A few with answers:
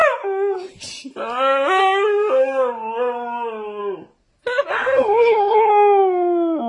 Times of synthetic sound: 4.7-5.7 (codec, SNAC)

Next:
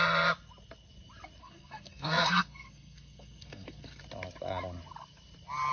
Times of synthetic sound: 1.4-4.0 (codec, SNAC)